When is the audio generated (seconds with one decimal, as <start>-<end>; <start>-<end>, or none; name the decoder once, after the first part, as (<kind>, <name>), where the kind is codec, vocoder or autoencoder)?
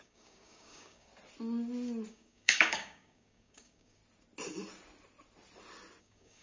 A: 0.0-1.1 (codec, DAC); 2.1-4.0; 6.0-6.4